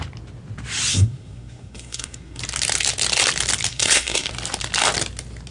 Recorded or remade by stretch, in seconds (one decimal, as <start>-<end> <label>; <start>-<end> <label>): 0.0-0.9 recorded; 0.9-2.4 remade; 2.4-3.7 recorded; 3.7-4.3 remade; 4.3-5.5 recorded